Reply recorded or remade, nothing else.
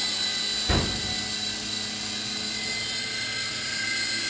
recorded